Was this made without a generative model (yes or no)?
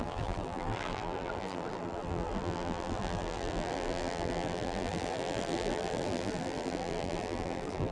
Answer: no